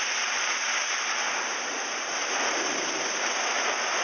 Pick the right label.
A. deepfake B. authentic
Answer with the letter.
A